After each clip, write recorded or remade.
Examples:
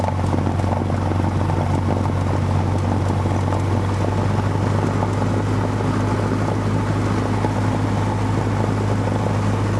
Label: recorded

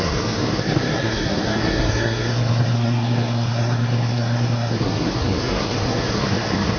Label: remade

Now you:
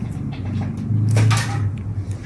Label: recorded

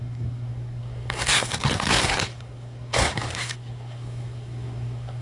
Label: remade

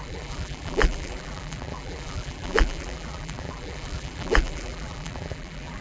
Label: remade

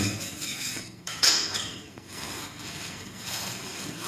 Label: remade